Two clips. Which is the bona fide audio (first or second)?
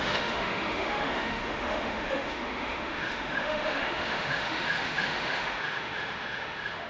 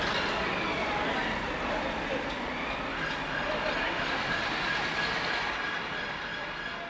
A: second